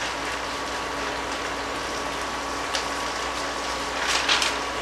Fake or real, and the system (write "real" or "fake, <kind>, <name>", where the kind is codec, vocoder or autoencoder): real